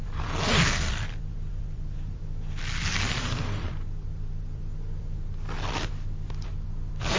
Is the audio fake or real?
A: fake